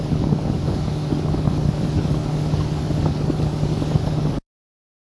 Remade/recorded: remade